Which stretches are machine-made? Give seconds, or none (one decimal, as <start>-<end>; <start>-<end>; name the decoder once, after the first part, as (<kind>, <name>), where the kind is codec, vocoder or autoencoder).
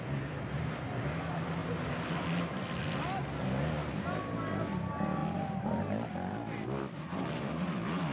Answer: none